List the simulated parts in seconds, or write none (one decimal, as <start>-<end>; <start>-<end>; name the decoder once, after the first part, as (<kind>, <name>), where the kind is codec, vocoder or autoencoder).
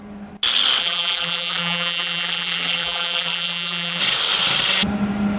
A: 0.8-4.0 (vocoder, BigVGAN v2)